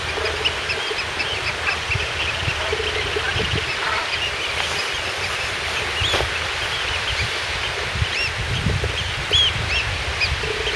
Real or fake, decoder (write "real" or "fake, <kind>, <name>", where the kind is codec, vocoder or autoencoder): fake, vocoder, BigVGAN v2